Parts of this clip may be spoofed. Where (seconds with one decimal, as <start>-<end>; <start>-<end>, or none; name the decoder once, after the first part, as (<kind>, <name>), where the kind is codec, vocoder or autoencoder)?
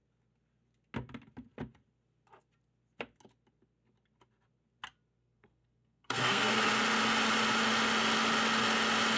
5.2-6.7 (codec, SNAC)